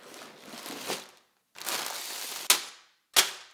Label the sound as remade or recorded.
recorded